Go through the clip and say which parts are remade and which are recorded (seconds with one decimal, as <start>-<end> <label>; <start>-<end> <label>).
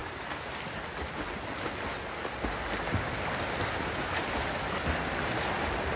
0.0-6.0 recorded